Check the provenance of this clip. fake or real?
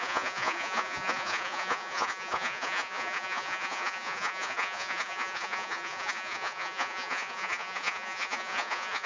fake